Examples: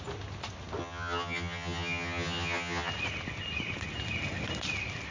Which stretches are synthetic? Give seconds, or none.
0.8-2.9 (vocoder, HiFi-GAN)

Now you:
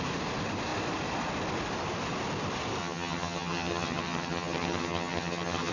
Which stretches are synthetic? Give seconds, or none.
2.8-5.7 (vocoder, HiFi-GAN)

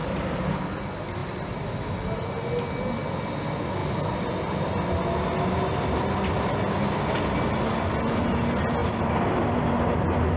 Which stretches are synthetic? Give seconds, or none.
none

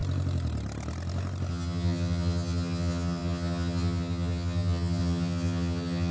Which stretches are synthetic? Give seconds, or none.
1.5-6.1 (vocoder, HiFi-GAN)